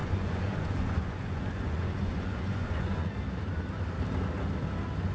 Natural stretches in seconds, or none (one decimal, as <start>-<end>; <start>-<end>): 3.1-5.1